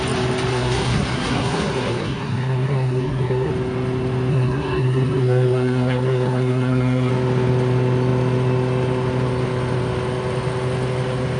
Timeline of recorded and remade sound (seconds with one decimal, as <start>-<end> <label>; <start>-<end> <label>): 0.0-0.5 recorded; 0.5-3.5 remade; 3.5-4.3 recorded; 4.3-7.1 remade; 7.1-11.4 recorded